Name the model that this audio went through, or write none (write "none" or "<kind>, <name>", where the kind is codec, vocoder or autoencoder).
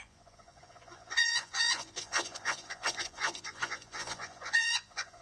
vocoder, Vocos